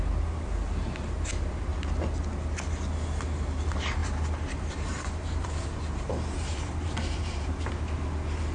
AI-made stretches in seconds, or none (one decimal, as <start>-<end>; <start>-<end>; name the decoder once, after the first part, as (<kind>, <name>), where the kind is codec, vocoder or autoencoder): 4.0-7.7 (vocoder, BigVGAN v2)